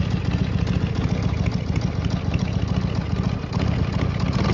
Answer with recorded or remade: recorded